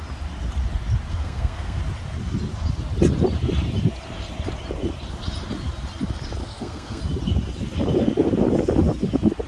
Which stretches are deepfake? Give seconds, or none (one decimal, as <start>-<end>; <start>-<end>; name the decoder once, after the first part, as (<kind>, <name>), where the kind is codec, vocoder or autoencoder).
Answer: 1.1-1.8 (codec, SNAC); 6.4-7.0